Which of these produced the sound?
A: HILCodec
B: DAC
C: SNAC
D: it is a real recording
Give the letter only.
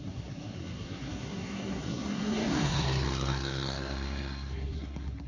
C